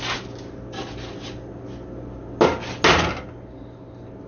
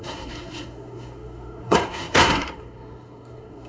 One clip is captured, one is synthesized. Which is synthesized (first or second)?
second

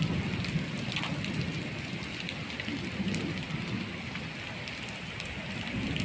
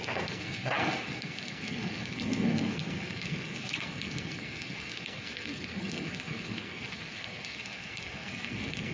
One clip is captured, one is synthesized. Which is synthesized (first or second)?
second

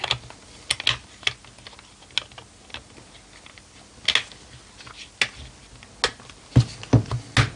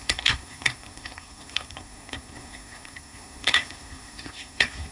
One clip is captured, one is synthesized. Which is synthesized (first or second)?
second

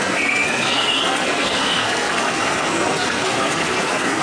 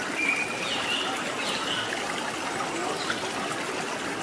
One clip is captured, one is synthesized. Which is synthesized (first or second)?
first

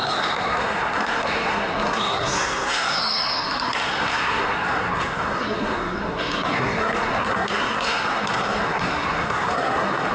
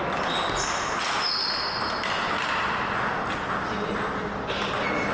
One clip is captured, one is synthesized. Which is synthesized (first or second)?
first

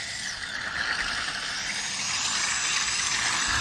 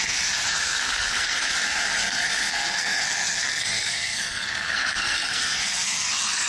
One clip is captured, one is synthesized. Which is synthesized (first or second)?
second